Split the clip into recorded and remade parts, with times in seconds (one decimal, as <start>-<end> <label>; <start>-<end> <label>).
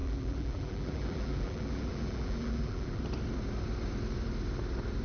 0.0-3.0 remade; 3.0-5.0 recorded